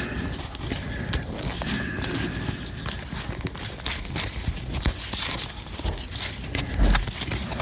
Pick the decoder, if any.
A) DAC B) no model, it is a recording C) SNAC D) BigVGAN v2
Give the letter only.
B